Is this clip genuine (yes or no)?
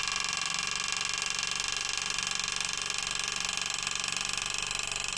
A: yes